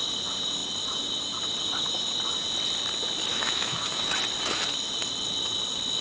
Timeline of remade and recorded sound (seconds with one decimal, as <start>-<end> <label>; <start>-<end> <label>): 0.0-3.3 recorded; 3.3-4.0 remade; 4.0-6.0 recorded